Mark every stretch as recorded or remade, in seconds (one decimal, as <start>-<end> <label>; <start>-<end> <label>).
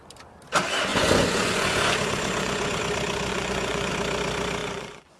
0.0-0.9 recorded; 0.9-2.8 remade; 2.8-3.3 recorded; 3.3-3.9 remade; 3.9-4.6 recorded; 4.6-5.2 remade